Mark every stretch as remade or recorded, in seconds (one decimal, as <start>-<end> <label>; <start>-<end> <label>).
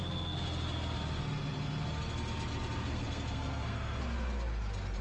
0.0-2.9 recorded; 2.9-4.0 remade; 4.0-5.0 recorded